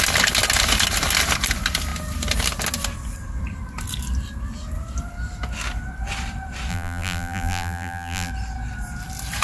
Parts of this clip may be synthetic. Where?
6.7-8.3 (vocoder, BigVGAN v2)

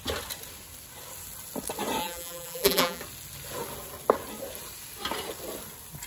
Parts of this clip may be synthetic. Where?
2.0-3.0 (vocoder, BigVGAN v2)

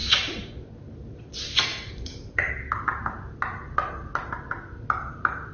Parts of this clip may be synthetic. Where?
0.0-0.7 (vocoder, BigVGAN v2); 1.7-2.5

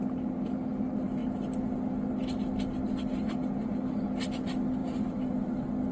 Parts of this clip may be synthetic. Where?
none

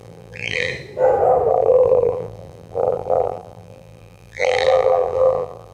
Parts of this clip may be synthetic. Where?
0.0-0.7 (vocoder, BigVGAN v2); 1.5-5.7

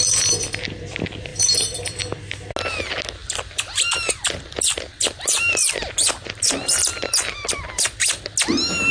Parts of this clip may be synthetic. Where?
1.3-2.0 (vocoder, BigVGAN v2); 3.2-8.1

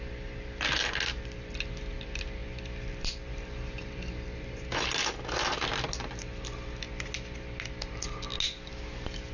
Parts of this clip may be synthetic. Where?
none

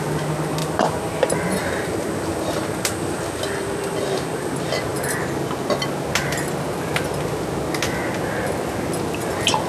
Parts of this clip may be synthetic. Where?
0.6-3.4 (vocoder, BigVGAN v2)